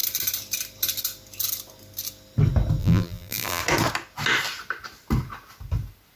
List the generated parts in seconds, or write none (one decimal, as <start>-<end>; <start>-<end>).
2.8-3.6